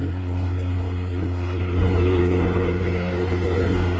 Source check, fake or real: fake